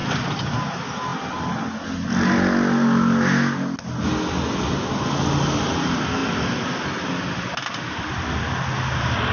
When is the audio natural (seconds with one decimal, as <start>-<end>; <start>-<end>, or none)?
0.0-9.3